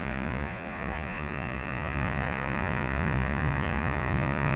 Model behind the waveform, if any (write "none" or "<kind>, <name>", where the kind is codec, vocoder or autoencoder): vocoder, Vocos